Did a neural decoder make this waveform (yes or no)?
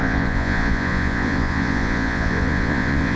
yes